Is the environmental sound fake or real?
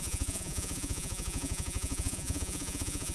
fake